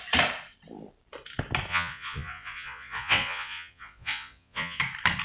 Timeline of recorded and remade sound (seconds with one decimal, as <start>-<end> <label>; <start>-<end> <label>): 0.0-1.7 recorded; 1.7-4.8 remade; 4.8-5.2 recorded